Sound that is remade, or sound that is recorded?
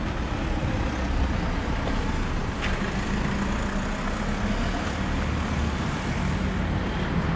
recorded